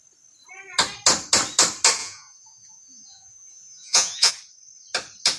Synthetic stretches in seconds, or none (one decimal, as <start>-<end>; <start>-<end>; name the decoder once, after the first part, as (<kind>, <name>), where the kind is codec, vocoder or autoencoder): 2.0-4.3 (vocoder, Vocos)